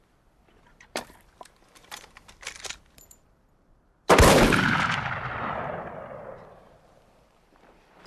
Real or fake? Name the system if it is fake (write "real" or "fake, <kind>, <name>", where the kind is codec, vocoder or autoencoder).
fake, vocoder, BigVGAN v2